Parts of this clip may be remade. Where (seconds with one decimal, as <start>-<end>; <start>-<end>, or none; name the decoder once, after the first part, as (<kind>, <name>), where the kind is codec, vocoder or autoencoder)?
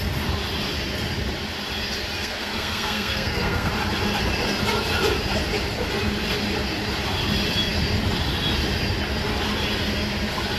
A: 2.2-3.7 (codec, SNAC)